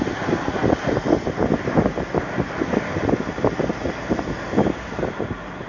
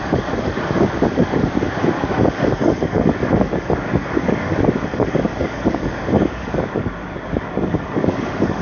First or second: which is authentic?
first